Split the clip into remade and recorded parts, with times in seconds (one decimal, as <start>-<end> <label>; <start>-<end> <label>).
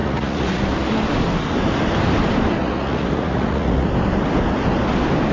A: 0.0-0.6 remade; 0.6-2.6 recorded; 2.6-3.9 remade; 3.9-5.3 recorded